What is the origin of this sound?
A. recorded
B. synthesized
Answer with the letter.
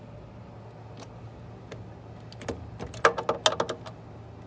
A